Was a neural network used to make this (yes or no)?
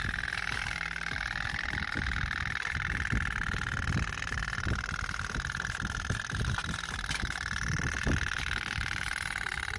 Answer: no